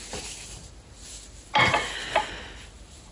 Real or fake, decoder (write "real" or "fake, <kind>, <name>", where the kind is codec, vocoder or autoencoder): real